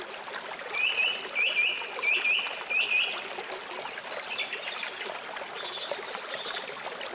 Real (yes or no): yes